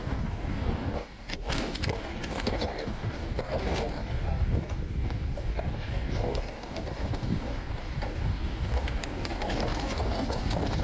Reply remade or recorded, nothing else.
remade